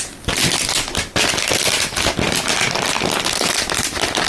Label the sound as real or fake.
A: real